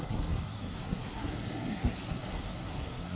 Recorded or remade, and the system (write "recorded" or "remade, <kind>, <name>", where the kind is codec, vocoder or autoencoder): remade, codec, SNAC